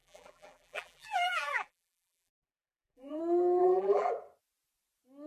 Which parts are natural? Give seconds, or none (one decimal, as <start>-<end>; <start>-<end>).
3.2-3.6; 4.1-5.3